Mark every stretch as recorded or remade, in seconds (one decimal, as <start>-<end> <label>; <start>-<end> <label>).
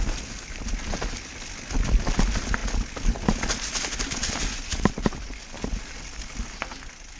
0.0-7.2 recorded